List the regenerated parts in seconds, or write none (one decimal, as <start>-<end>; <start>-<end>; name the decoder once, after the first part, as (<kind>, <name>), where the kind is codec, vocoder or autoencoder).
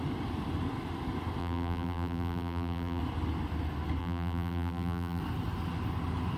1.4-3.0 (vocoder, BigVGAN v2); 4.0-5.2